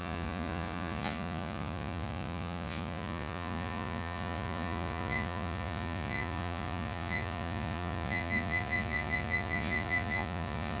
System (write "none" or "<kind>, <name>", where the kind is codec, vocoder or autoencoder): vocoder, Vocos